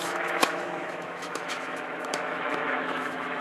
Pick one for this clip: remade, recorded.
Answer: remade